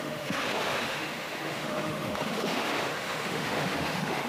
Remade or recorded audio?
remade